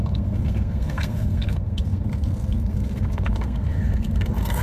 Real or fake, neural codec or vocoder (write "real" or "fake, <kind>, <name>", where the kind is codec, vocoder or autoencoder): fake, codec, SNAC